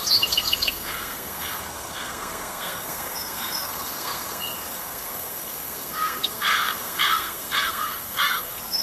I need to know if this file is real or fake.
fake